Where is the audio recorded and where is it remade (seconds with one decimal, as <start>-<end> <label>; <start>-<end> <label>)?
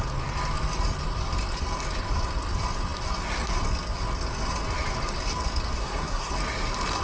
0.0-5.8 recorded; 5.8-6.3 remade; 6.3-7.0 recorded